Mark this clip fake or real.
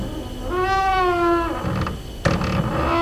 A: real